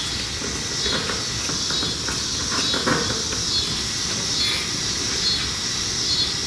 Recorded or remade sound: recorded